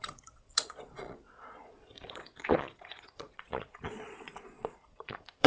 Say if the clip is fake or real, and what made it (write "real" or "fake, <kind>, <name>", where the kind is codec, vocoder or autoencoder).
fake, vocoder, Vocos